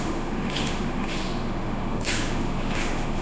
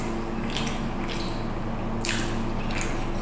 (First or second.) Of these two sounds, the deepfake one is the first